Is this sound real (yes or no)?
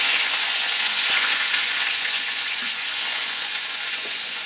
no